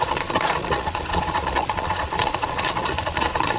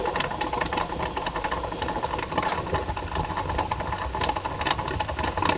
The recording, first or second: second